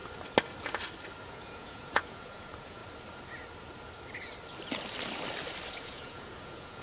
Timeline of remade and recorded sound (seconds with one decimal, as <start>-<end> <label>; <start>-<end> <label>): 0.0-1.2 recorded; 1.2-2.8 remade; 2.8-5.7 recorded; 5.7-6.8 remade